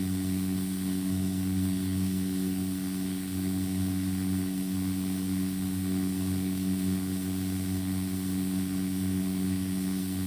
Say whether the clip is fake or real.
fake